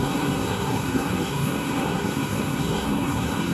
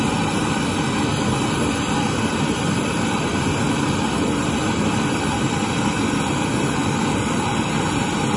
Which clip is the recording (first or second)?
second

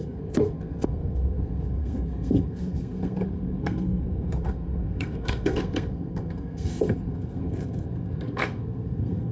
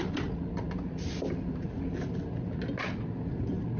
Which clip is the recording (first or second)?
second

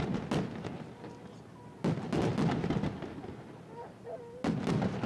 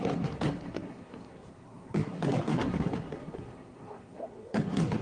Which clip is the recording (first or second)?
first